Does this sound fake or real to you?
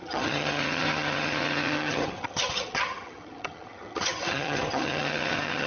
fake